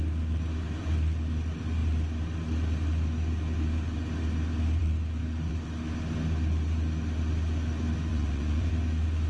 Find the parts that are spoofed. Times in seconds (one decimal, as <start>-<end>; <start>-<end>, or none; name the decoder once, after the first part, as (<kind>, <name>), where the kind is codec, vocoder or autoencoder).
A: 8.1-8.7 (vocoder, Vocos)